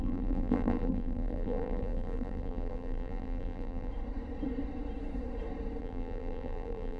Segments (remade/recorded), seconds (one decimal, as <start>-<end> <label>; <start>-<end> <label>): 0.0-3.9 remade; 3.9-5.8 recorded; 5.8-7.0 remade